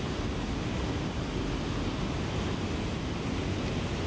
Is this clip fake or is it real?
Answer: real